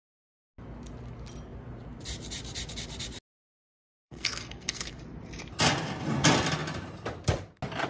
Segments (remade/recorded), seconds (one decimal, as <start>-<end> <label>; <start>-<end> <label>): 0.0-3.8 recorded; 3.8-5.0 remade; 5.0-7.9 recorded